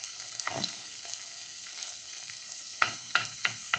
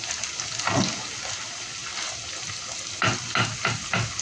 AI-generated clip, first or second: first